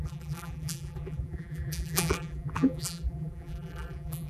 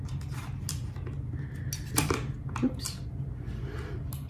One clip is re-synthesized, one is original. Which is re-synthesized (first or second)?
first